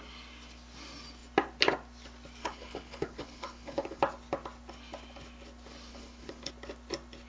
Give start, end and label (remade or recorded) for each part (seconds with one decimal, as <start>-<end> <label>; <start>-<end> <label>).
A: 0.0-2.4 recorded; 2.4-4.0 remade; 4.0-5.9 recorded; 5.9-6.5 remade; 6.5-7.3 recorded

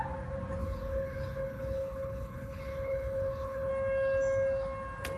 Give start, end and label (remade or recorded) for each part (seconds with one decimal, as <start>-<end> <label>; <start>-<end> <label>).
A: 0.0-0.6 recorded; 0.6-3.7 remade; 3.7-5.2 recorded

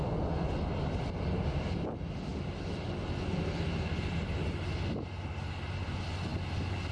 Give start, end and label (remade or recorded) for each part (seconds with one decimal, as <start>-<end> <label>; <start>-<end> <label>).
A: 0.0-6.9 recorded

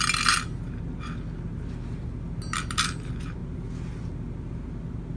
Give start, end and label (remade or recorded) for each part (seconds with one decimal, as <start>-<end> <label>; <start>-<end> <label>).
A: 0.0-5.2 recorded